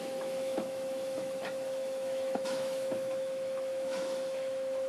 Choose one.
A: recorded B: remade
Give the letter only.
B